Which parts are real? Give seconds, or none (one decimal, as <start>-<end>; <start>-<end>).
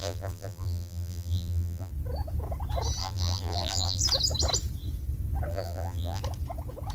1.9-3.0; 4.0-5.5; 6.2-6.9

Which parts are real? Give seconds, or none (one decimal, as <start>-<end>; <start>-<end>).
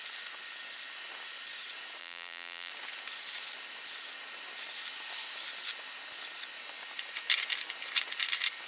0.0-2.0; 2.7-8.7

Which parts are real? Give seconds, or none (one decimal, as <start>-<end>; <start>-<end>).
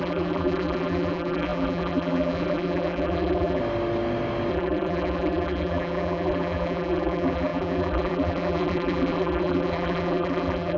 3.6-4.5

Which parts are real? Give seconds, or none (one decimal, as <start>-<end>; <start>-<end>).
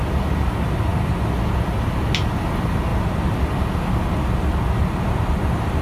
0.0-2.9; 3.5-5.8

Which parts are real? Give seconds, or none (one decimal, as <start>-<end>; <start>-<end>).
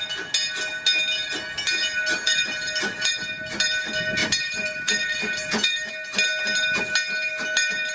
0.0-1.8; 3.1-4.2; 5.9-7.9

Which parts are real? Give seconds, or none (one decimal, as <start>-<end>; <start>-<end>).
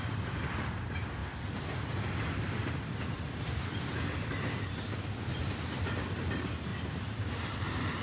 0.0-1.2; 5.9-8.0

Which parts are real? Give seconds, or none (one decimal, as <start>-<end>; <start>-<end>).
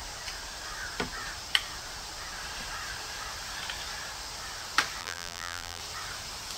0.0-5.0; 5.8-6.6